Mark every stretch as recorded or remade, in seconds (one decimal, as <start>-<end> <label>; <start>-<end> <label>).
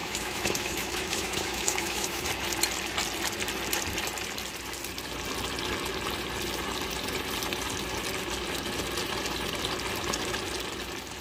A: 0.0-2.3 remade; 2.3-11.2 recorded